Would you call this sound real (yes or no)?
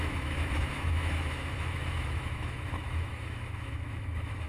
no